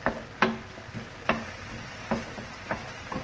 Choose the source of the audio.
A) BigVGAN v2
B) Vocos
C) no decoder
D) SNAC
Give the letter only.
C